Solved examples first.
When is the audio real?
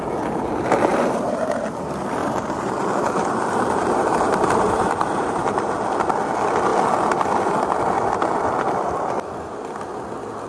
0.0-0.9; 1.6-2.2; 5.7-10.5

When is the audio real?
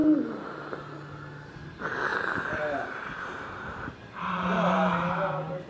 0.6-2.1